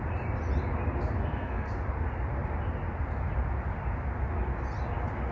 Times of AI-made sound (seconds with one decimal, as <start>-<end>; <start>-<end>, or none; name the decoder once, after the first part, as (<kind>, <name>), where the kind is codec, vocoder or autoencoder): 1.2-1.7 (codec, SNAC)